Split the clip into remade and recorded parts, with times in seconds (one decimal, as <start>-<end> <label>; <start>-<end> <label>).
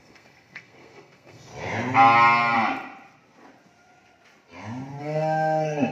0.0-1.5 remade; 1.5-5.0 recorded; 5.0-5.9 remade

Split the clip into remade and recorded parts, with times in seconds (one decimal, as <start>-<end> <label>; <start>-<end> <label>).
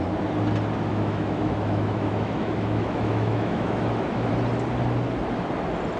0.0-0.9 recorded; 0.9-4.3 remade; 4.3-6.0 recorded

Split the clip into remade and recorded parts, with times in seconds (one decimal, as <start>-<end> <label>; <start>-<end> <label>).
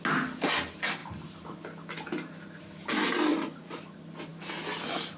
0.0-3.3 recorded; 3.3-3.8 remade; 3.8-5.2 recorded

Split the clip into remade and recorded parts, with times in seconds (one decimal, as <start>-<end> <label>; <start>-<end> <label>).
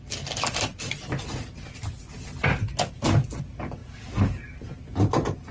0.0-0.7 remade; 0.7-3.4 recorded; 3.4-3.8 remade; 3.8-5.5 recorded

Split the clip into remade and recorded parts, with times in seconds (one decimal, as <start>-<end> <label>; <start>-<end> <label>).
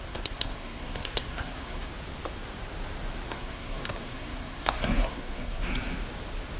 0.0-1.9 remade; 1.9-3.3 recorded; 3.3-5.7 remade; 5.7-6.6 recorded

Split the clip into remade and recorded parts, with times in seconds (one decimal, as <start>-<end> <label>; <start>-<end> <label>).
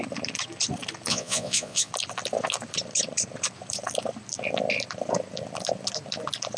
0.0-1.1 recorded; 1.1-1.9 remade; 1.9-6.6 recorded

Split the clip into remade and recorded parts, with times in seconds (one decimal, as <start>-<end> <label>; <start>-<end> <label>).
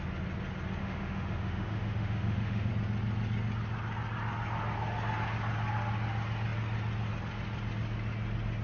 0.0-0.8 recorded; 0.8-2.7 remade; 2.7-8.6 recorded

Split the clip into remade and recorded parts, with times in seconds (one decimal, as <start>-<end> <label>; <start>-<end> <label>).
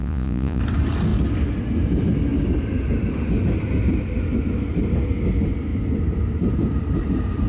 0.0-0.6 remade; 0.6-7.5 recorded